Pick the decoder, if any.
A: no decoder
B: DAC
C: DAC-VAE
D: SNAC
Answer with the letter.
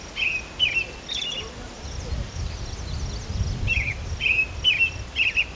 A